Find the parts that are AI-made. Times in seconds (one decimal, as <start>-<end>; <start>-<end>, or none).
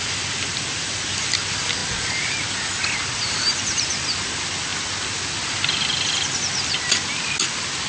none